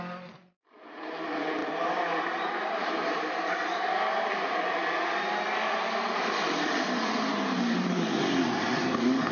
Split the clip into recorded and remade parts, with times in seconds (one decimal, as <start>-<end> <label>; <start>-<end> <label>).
0.0-1.6 recorded; 1.6-3.5 remade; 3.5-9.3 recorded